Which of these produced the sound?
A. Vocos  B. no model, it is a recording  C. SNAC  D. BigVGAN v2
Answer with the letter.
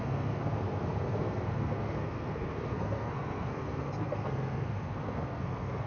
C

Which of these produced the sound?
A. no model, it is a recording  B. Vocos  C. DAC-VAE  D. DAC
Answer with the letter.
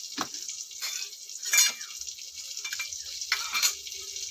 A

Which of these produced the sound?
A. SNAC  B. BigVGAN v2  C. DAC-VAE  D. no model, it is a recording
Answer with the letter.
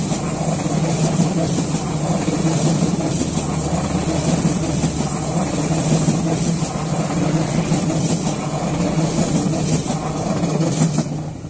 D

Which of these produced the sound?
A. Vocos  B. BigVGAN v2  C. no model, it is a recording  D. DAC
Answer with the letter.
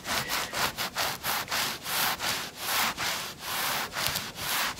C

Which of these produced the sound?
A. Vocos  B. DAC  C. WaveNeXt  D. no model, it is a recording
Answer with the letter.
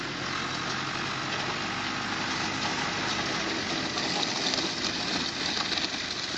D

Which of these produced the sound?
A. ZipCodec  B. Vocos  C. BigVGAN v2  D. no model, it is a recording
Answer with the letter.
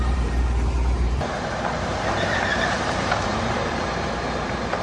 C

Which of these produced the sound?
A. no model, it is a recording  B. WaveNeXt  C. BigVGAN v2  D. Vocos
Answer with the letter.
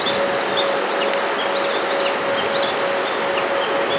A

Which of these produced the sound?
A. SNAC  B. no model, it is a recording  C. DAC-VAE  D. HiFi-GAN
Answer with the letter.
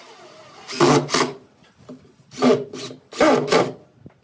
B